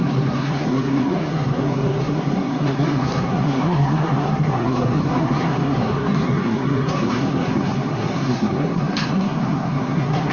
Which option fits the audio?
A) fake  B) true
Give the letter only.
A